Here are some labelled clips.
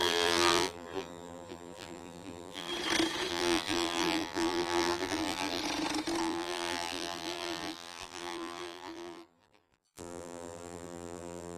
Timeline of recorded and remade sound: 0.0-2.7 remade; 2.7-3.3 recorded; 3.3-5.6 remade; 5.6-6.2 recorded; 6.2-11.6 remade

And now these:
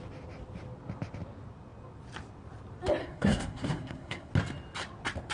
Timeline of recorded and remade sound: 0.0-3.0 recorded; 3.0-4.3 remade; 4.3-5.3 recorded